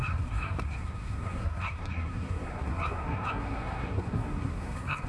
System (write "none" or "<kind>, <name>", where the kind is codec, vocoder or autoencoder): codec, SNAC